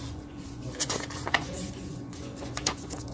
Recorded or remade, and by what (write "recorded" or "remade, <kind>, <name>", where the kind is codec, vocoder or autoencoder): remade, vocoder, Vocos